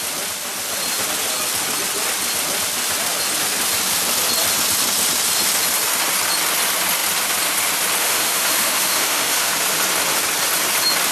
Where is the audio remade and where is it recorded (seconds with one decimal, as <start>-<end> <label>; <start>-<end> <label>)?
0.0-8.0 recorded; 8.0-9.5 remade; 9.5-11.1 recorded